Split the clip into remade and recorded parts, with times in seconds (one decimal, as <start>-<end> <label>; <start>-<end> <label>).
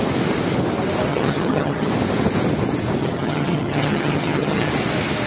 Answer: 0.0-1.1 recorded; 1.1-1.9 remade; 1.9-3.0 recorded; 3.0-4.7 remade; 4.7-5.3 recorded